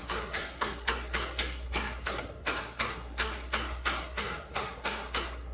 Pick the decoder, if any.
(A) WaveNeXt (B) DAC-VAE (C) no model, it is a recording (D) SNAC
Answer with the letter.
D